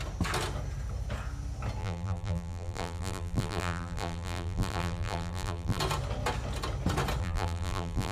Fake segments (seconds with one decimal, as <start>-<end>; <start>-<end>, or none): 1.8-5.8; 7.2-8.1